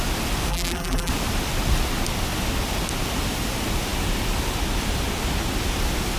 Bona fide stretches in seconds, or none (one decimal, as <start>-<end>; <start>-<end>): 0.0-0.5; 1.1-6.2